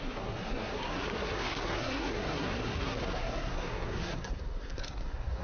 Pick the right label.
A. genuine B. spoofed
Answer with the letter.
B